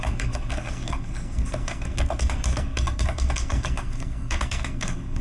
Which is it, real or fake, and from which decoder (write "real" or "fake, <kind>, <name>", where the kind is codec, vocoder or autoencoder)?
fake, codec, SNAC